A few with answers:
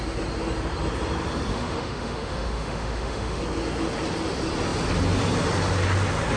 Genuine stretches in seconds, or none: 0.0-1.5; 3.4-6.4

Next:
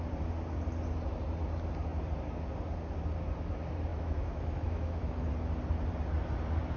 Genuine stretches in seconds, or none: 0.0-3.9; 5.3-6.8